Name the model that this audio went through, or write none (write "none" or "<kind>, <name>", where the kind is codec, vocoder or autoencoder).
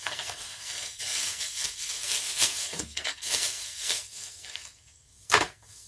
codec, SNAC